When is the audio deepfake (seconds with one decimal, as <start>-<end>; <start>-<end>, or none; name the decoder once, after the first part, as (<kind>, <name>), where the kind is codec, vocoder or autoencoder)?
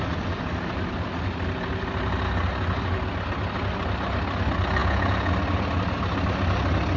4.8-5.3 (vocoder, Vocos)